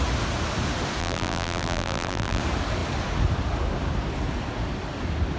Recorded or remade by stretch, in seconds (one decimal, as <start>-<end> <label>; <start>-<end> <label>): 0.0-1.0 recorded; 1.0-2.4 remade; 2.4-5.4 recorded